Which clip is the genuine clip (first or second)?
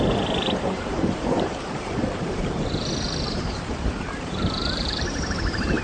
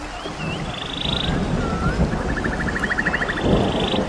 second